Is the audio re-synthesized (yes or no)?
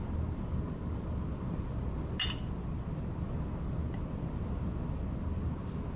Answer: no